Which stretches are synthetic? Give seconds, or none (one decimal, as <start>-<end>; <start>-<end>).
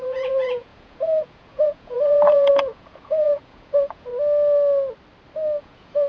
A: 0.0-4.1; 5.6-6.1